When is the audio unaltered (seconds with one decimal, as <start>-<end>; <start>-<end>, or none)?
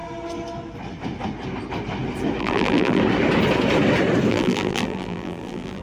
0.0-2.4; 3.0-4.3